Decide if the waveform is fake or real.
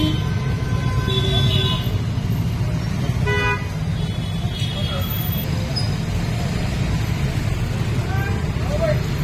real